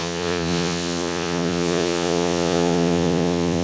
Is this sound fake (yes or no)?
yes